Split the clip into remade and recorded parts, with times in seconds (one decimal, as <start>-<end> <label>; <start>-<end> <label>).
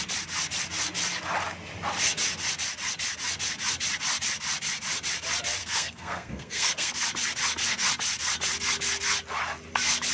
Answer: 0.0-5.6 recorded; 5.6-6.9 remade; 6.9-10.1 recorded